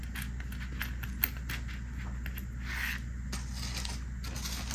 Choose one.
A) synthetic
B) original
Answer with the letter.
B